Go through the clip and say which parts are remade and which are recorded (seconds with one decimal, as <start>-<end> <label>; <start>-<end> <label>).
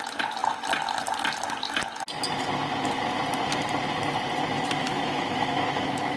0.0-4.8 recorded; 4.8-6.2 remade